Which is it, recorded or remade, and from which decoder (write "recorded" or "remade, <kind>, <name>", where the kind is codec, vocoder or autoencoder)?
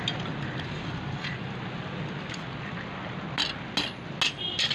recorded